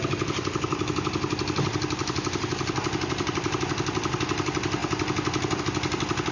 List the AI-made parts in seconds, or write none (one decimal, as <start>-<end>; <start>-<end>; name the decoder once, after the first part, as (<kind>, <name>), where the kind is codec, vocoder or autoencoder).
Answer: none

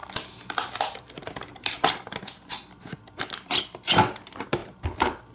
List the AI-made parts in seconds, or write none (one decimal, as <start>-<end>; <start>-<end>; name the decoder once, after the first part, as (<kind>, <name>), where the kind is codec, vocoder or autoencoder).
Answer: none